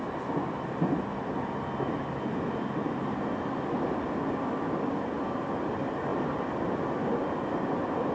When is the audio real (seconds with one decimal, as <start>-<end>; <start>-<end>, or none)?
0.0-8.1